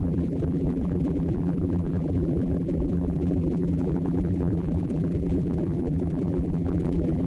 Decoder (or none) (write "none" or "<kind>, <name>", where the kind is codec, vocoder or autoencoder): vocoder, BigVGAN v2